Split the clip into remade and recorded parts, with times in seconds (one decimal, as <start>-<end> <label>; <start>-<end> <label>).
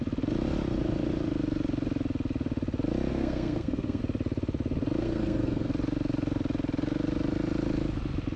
0.0-3.1 recorded; 3.1-4.0 remade; 4.0-5.0 recorded; 5.0-5.7 remade; 5.7-8.4 recorded